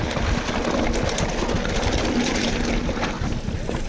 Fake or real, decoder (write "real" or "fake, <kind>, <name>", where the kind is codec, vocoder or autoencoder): real